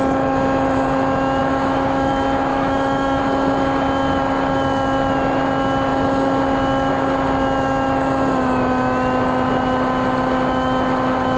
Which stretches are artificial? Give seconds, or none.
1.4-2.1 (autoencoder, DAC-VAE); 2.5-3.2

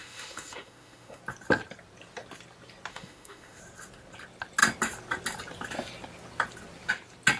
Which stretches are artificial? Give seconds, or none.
0.0-1.2 (autoencoder, DAC-VAE); 2.9-3.6

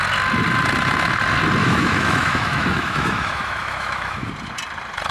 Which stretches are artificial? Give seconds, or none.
1.6-4.3 (autoencoder, DAC-VAE)